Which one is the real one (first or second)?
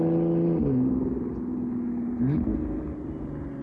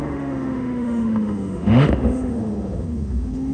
first